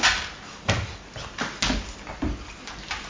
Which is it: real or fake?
real